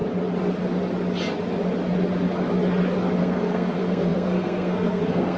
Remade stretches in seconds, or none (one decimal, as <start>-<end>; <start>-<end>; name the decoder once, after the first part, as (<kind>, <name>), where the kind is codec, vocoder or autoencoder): 3.2-5.4 (codec, SNAC)